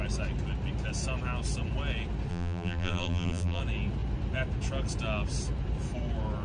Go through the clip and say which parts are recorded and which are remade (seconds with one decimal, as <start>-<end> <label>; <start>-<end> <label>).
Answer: 0.0-2.3 recorded; 2.3-3.6 remade; 3.6-6.4 recorded